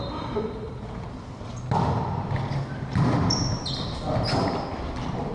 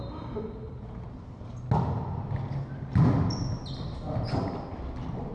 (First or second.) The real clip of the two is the second